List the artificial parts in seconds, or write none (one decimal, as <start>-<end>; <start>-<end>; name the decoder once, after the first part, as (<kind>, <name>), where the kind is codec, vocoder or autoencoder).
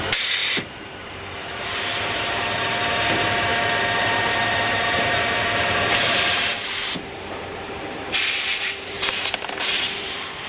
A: 0.0-3.5 (vocoder, BigVGAN v2); 4.0-10.5